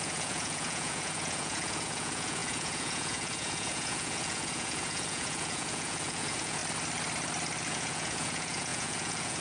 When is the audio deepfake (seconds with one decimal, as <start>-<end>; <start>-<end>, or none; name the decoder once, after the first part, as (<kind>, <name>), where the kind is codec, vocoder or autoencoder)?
0.0-6.6 (vocoder, Vocos); 7.7-9.4